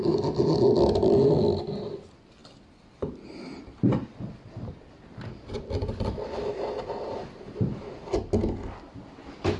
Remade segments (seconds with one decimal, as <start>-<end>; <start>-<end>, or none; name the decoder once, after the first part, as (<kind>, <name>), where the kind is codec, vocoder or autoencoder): none

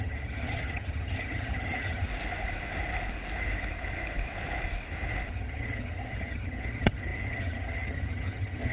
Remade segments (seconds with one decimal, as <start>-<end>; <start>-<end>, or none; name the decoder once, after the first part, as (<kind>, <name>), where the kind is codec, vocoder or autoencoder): 0.0-2.1 (vocoder, HiFi-GAN); 5.3-8.7

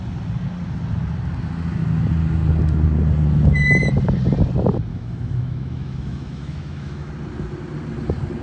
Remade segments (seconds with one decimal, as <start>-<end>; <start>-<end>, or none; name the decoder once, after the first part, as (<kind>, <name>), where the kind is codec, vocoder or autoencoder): 4.9-7.1 (autoencoder, DAC-VAE)

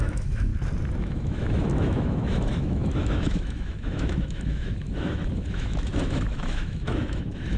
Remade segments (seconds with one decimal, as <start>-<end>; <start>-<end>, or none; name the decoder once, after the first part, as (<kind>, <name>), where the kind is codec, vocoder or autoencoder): 0.0-0.5 (autoencoder, DAC-VAE); 1.0-7.6

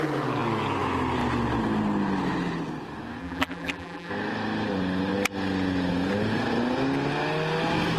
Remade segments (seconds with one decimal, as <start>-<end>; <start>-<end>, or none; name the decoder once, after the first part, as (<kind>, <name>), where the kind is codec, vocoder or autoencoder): 3.2-4.1 (vocoder, BigVGAN v2)